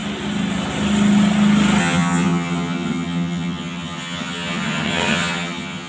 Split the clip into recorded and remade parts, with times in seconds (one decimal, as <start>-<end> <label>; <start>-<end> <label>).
0.0-1.8 recorded; 1.8-5.9 remade